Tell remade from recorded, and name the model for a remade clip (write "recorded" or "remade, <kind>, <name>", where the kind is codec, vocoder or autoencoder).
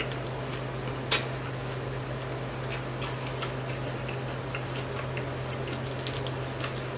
recorded